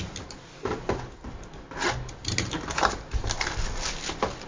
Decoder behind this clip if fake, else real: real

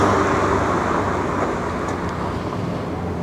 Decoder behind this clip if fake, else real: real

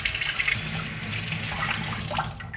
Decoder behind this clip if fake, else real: real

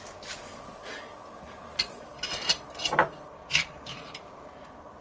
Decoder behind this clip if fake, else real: real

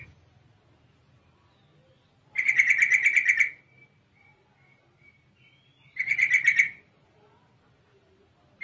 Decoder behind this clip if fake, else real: real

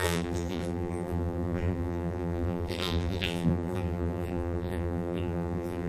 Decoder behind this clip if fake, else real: fake, vocoder, BigVGAN v2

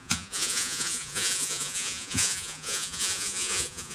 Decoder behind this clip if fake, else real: fake, vocoder, Vocos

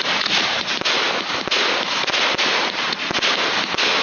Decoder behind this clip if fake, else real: real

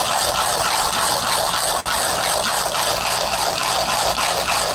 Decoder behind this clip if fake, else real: real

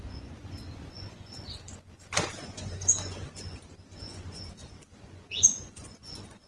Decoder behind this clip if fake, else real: fake, vocoder, Vocos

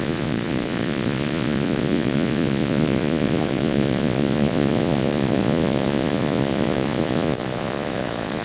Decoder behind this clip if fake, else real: fake, vocoder, Vocos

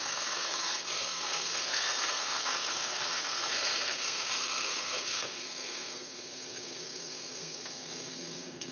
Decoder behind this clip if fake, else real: fake, codec, SNAC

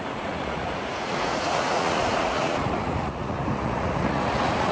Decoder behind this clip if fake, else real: fake, vocoder, Vocos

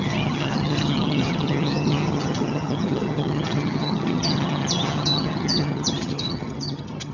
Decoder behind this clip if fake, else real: fake, vocoder, HiFi-GAN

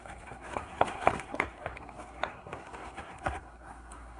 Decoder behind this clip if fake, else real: fake, codec, SNAC